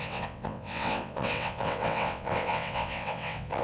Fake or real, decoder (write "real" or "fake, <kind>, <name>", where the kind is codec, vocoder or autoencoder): fake, vocoder, WaveNeXt